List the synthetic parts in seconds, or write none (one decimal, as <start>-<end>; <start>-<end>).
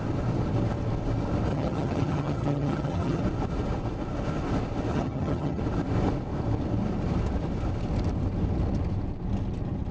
1.5-3.2; 4.9-5.6